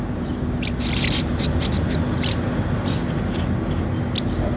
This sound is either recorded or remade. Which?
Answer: recorded